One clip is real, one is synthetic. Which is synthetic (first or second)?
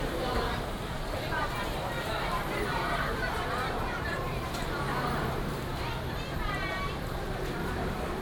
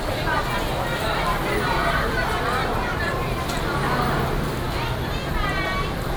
first